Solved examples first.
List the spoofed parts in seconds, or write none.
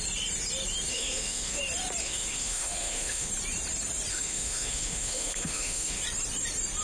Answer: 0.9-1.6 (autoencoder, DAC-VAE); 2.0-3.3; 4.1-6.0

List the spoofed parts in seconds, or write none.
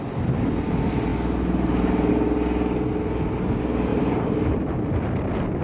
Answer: 3.9-4.7 (vocoder, BigVGAN v2)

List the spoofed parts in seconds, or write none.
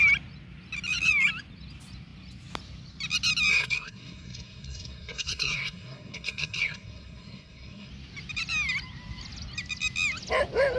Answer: 3.5-7.9 (codec, SNAC)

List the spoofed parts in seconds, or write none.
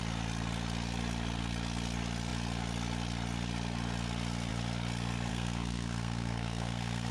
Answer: 5.3-7.1 (codec, SNAC)